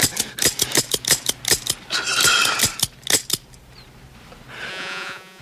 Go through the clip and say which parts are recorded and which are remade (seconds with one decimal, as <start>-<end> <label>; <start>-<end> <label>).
0.0-4.7 recorded; 4.7-5.4 remade